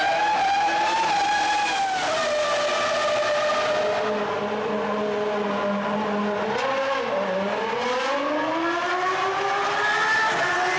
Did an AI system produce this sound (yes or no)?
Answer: no